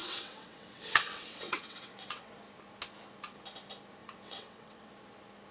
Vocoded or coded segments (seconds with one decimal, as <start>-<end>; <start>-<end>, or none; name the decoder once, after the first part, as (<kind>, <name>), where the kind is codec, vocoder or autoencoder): 0.0-2.3 (vocoder, WaveNeXt); 4.0-4.9

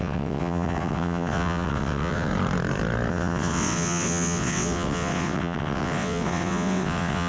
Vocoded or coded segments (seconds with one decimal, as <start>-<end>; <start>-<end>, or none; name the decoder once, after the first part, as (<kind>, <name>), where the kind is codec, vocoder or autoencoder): 0.0-2.3 (vocoder, WaveNeXt); 3.1-7.3

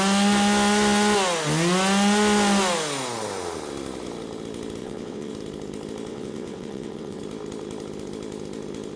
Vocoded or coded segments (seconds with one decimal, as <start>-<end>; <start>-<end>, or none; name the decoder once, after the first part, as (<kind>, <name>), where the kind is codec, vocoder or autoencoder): 4.8-5.3 (vocoder, WaveNeXt); 6.1-7.2

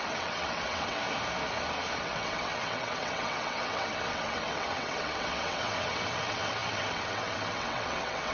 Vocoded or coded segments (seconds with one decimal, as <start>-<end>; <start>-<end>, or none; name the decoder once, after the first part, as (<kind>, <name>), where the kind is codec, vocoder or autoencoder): 0.0-1.0 (vocoder, WaveNeXt); 2.0-8.3

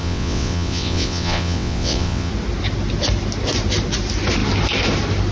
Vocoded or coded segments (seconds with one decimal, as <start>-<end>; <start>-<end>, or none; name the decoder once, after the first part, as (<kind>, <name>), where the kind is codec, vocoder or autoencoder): 0.0-2.3 (vocoder, WaveNeXt)